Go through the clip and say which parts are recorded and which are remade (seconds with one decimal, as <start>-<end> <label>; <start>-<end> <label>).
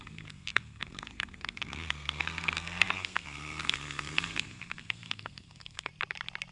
0.0-5.9 remade; 5.9-6.5 recorded